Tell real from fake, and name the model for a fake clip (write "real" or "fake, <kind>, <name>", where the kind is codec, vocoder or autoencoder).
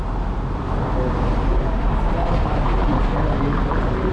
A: real